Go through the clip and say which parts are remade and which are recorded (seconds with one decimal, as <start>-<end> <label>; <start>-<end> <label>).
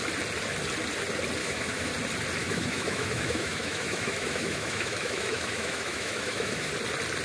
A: 0.0-1.4 recorded; 1.4-1.9 remade; 1.9-2.4 recorded; 2.4-6.7 remade; 6.7-7.2 recorded